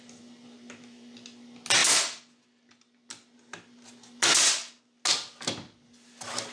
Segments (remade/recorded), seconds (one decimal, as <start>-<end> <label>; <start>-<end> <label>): 0.0-6.5 recorded